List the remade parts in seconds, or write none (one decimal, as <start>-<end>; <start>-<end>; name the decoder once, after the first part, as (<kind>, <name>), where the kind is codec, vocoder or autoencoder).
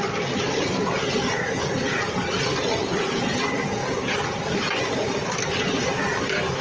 none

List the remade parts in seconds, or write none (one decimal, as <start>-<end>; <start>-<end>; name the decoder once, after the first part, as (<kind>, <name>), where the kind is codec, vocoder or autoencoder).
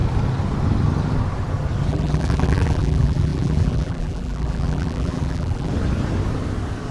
1.9-5.7 (vocoder, BigVGAN v2)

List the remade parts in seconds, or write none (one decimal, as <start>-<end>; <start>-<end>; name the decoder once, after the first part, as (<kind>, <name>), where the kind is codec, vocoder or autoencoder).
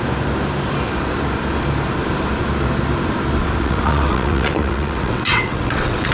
3.6-6.1 (vocoder, WaveNeXt)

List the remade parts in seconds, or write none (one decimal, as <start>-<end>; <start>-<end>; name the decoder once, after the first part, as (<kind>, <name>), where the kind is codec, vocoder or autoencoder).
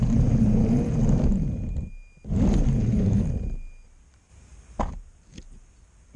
4.3-4.8 (vocoder, BigVGAN v2)